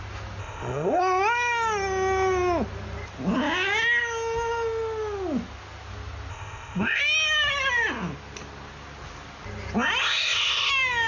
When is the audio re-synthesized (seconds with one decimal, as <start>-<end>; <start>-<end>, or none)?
0.4-1.0; 6.3-7.0; 10.0-10.7